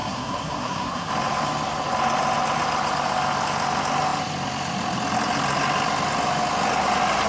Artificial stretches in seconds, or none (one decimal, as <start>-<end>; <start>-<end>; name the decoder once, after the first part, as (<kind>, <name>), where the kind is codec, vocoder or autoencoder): 0.0-1.1 (codec, SNAC)